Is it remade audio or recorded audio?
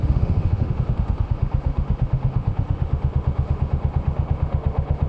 remade